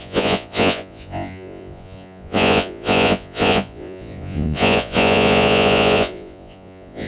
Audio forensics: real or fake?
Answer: fake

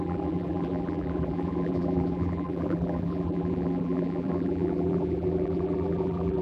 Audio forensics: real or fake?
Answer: fake